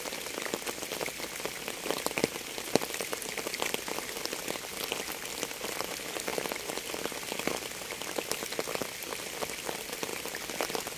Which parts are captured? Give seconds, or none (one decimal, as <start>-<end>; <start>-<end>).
0.0-10.1